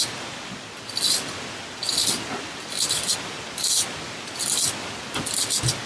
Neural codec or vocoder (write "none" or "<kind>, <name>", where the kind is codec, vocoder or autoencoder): none